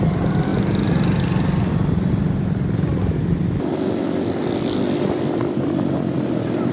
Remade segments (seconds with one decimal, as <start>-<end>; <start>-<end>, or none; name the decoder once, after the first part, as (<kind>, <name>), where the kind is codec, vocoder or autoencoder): 0.0-0.5 (vocoder, BigVGAN v2); 1.7-6.7